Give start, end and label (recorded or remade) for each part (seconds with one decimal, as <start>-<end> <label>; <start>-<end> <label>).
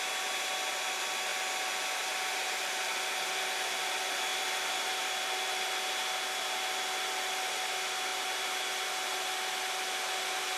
0.0-10.6 recorded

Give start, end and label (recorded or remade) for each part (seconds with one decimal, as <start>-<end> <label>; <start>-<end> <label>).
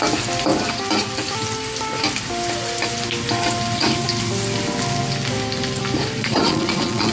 0.0-6.2 recorded; 6.2-7.1 remade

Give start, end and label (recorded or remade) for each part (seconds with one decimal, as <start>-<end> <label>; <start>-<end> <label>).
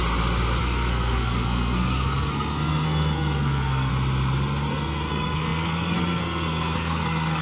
0.0-0.6 recorded; 0.6-3.9 remade; 3.9-4.7 recorded; 4.7-7.4 remade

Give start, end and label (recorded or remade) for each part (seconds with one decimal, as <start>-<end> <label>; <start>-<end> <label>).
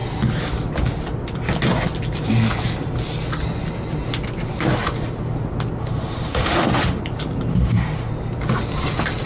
0.0-5.8 recorded; 5.8-7.0 remade; 7.0-7.5 recorded; 7.5-8.1 remade; 8.1-9.3 recorded